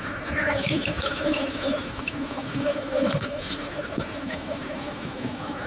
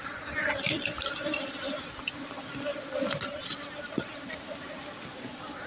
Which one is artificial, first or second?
first